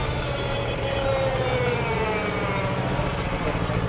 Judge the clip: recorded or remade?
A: recorded